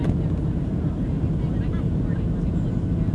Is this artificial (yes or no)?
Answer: no